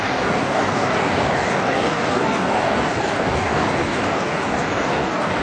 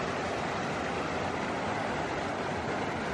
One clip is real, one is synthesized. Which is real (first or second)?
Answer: second